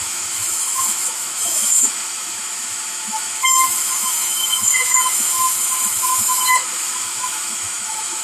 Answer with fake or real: fake